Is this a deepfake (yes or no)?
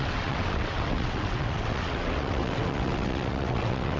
yes